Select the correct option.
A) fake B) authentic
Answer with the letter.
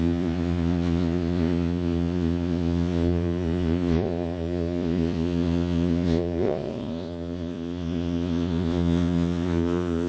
A